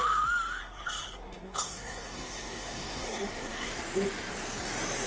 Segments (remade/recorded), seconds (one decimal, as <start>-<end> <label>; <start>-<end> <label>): 0.0-0.6 recorded; 0.6-3.7 remade; 3.7-5.1 recorded